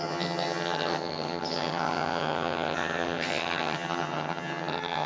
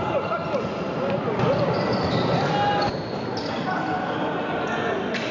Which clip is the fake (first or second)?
first